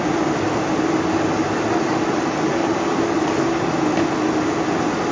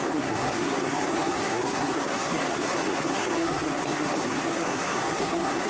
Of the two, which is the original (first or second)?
first